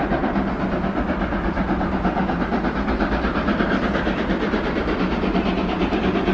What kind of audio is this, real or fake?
real